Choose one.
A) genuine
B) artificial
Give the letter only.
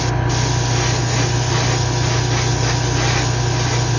A